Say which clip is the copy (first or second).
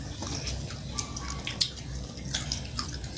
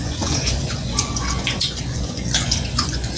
second